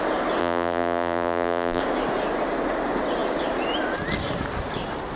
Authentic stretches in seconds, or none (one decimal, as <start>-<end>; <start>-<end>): 0.0-0.4; 1.8-5.2